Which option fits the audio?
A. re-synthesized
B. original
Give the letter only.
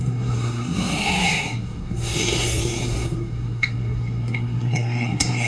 A